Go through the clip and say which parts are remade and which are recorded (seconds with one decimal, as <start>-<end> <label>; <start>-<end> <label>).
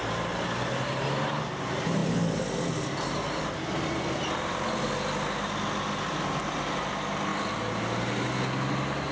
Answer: 0.0-9.1 recorded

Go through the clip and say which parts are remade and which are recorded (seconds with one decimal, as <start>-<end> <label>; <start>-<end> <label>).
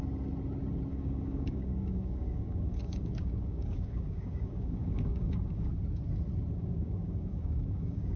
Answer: 0.0-0.9 recorded; 0.9-5.7 remade; 5.7-6.5 recorded; 6.5-8.2 remade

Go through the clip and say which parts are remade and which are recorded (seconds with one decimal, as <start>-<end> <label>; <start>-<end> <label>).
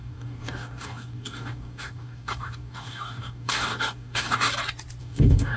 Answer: 0.0-4.5 remade; 4.5-5.0 recorded; 5.0-5.6 remade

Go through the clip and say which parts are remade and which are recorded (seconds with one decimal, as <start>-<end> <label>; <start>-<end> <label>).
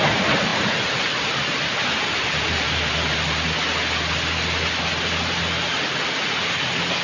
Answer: 0.0-7.0 recorded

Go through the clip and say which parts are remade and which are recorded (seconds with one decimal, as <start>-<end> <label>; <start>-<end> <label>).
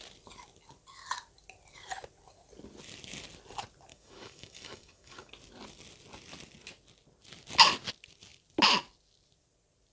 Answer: 0.0-3.9 recorded; 3.9-5.3 remade; 5.3-9.9 recorded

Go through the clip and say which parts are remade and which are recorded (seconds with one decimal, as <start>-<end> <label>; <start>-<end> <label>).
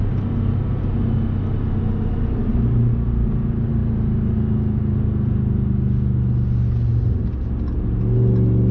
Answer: 0.0-8.7 recorded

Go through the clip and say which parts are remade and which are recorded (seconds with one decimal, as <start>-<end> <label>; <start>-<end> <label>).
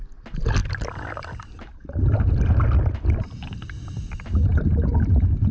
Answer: 0.0-5.5 recorded